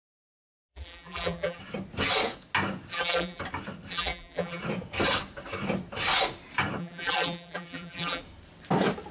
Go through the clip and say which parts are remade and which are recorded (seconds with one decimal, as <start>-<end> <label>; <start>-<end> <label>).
0.0-0.7 recorded; 0.7-1.6 remade; 1.6-2.9 recorded; 2.9-3.4 remade; 3.4-3.9 recorded; 3.9-4.6 remade; 4.6-6.8 recorded; 6.8-8.2 remade; 8.2-9.1 recorded